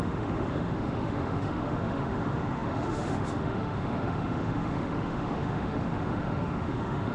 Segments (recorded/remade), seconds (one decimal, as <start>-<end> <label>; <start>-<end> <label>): 0.0-7.1 remade